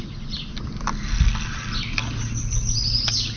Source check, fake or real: real